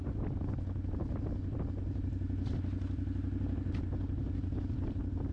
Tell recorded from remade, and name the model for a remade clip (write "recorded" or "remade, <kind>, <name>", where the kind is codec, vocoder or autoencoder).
recorded